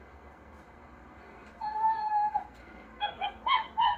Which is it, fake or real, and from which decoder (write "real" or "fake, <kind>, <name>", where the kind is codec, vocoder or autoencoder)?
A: fake, codec, SNAC